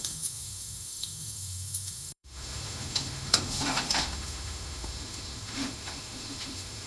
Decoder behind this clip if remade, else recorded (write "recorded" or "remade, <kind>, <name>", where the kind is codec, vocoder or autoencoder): remade, autoencoder, DAC-VAE